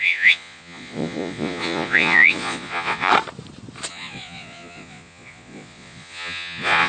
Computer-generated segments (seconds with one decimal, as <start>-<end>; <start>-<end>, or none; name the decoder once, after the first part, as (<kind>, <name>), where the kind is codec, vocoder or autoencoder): 0.0-3.1 (vocoder, Vocos); 3.9-6.9